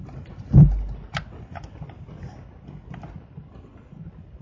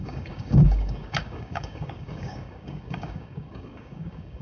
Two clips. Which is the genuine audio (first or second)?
first